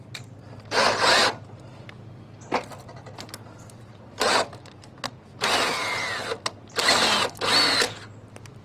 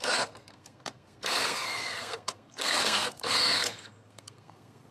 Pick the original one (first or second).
first